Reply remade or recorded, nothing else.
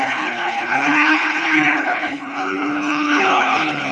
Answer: remade